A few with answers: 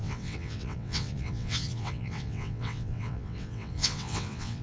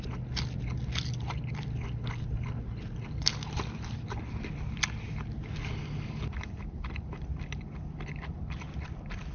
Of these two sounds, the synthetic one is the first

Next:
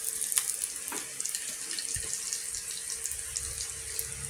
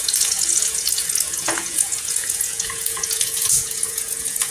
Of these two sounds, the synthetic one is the second